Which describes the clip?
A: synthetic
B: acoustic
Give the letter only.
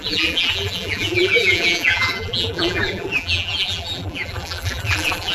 A